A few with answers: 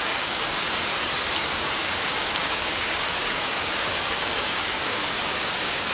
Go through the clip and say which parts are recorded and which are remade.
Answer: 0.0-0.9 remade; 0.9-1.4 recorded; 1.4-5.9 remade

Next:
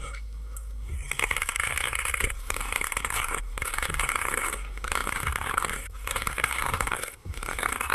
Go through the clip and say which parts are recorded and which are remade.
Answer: 0.0-7.9 remade

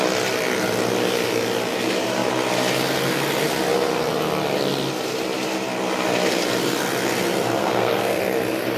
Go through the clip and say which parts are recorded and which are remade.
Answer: 0.0-7.6 recorded; 7.6-8.2 remade; 8.2-8.8 recorded

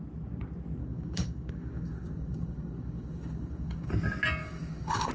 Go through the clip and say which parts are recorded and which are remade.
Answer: 0.0-0.8 recorded; 0.8-3.9 remade; 3.9-4.4 recorded; 4.4-5.1 remade

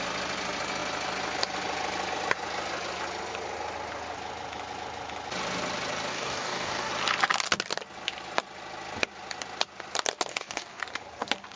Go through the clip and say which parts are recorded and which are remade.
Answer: 0.0-6.1 recorded; 6.1-6.9 remade; 6.9-10.3 recorded; 10.3-10.8 remade; 10.8-11.6 recorded

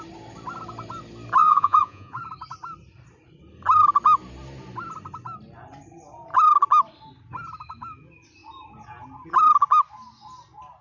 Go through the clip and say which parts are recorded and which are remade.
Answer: 0.0-1.4 recorded; 1.4-2.2 remade; 2.2-10.8 recorded